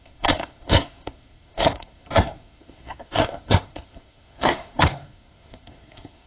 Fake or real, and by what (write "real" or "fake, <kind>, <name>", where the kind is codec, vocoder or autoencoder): fake, codec, SNAC